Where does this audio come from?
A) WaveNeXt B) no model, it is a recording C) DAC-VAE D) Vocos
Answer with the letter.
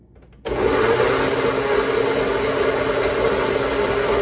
B